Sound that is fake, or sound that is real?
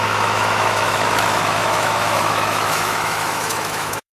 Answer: fake